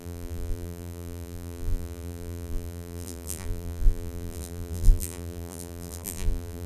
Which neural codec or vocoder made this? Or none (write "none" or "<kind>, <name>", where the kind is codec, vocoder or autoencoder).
vocoder, BigVGAN v2